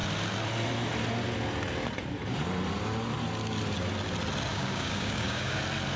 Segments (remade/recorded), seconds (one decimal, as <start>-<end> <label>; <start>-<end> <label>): 0.0-4.5 recorded; 4.5-5.6 remade; 5.6-6.0 recorded